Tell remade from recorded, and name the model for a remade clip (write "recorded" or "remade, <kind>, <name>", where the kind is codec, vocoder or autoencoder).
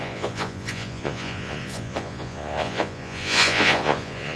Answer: remade, vocoder, Vocos